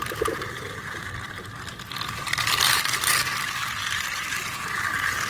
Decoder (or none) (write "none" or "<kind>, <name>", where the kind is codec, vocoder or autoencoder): vocoder, BigVGAN v2